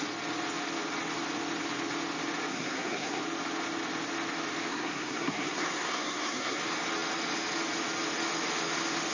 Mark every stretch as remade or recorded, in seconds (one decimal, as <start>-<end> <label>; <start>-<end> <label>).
0.0-2.5 recorded; 2.5-3.2 remade; 3.2-4.7 recorded; 4.7-6.6 remade; 6.6-9.1 recorded